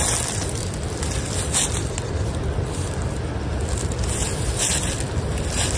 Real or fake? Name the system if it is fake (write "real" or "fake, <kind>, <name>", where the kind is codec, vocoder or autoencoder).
real